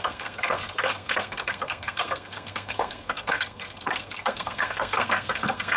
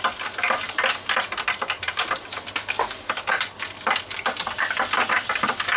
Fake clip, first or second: first